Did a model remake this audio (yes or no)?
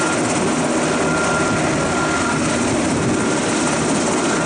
no